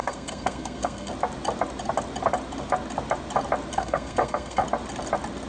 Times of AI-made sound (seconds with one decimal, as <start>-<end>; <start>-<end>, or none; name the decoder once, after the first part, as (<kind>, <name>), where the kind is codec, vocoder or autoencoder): 0.0-1.1 (codec, SNAC); 3.7-4.6